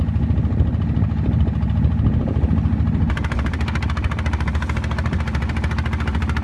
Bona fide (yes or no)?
yes